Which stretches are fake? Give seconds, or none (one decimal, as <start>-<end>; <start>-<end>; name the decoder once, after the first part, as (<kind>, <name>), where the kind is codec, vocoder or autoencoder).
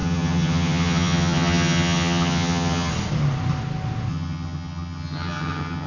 0.0-2.9 (vocoder, HiFi-GAN); 4.1-5.9